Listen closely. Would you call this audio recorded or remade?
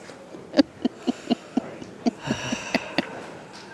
recorded